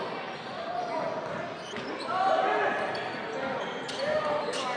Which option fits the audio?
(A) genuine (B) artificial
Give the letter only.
A